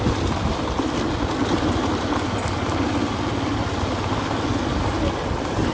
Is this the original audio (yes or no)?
yes